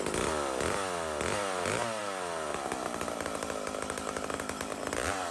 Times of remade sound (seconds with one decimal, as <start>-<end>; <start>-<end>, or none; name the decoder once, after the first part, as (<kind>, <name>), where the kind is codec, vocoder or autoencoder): none